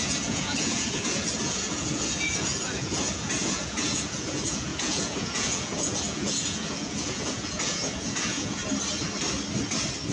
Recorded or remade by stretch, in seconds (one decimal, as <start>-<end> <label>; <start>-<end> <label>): 0.0-8.6 remade; 8.6-10.1 recorded